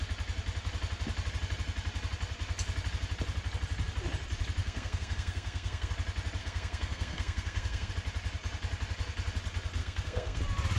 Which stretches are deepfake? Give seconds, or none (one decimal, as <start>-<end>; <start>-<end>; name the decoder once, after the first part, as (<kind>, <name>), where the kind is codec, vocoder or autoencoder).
4.6-5.9 (codec, SNAC); 6.4-7.9; 9.8-10.4